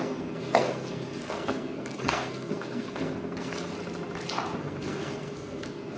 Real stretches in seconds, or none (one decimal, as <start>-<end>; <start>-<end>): 3.7-4.6